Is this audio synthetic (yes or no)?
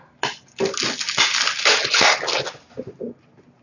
no